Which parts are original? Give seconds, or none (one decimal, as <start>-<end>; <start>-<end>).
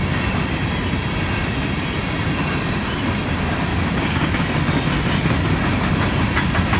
0.0-3.7; 4.4-6.8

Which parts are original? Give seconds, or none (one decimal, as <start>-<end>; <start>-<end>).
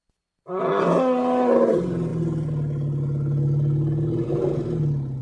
0.0-5.2